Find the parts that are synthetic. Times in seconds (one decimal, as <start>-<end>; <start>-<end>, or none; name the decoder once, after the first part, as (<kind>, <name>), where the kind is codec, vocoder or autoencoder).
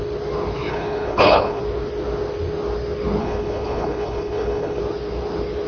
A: 0.7-1.6 (codec, HILCodec); 3.2-4.8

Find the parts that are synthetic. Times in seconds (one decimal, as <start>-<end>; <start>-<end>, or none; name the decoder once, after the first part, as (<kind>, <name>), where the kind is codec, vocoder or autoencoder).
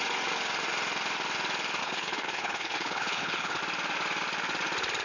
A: 1.8-3.6 (codec, HILCodec)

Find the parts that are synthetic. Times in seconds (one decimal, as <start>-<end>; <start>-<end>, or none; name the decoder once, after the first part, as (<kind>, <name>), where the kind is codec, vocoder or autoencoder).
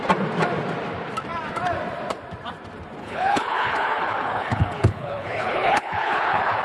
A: 3.0-6.6 (codec, HILCodec)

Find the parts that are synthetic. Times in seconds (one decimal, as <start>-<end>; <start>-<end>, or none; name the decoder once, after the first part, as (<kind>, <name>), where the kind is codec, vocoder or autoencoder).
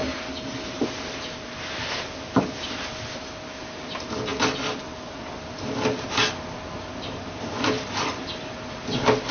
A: none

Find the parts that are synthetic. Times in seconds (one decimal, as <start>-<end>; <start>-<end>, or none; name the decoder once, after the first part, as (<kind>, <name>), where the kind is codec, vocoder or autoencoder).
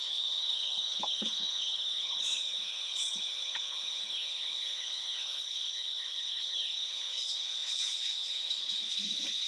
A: 0.0-9.5 (codec, HILCodec)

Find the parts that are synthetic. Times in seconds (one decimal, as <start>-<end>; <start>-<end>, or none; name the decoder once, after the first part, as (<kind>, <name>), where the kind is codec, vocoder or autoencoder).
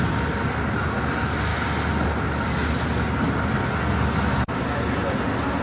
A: none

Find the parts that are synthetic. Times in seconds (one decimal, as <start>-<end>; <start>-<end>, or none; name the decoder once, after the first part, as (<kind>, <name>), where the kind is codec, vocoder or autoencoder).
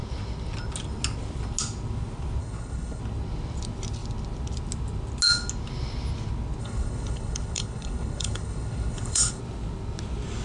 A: 2.4-3.0 (codec, HILCodec); 6.6-9.4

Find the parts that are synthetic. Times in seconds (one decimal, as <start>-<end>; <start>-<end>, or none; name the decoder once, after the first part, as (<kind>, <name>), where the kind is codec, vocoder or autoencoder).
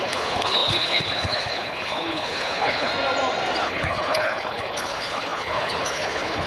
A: 0.0-2.9 (codec, HILCodec); 3.6-6.5